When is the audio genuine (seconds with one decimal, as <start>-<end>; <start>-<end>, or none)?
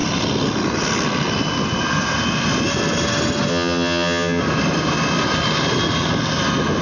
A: 0.0-3.5; 4.4-6.8